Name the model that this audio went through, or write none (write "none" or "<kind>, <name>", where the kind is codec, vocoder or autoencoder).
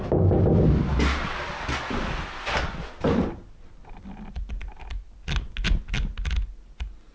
none